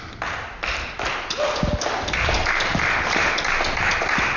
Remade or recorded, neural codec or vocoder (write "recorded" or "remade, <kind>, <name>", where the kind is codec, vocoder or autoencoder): recorded